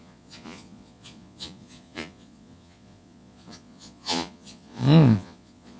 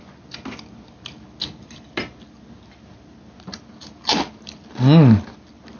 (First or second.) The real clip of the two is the second